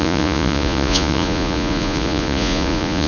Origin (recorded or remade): remade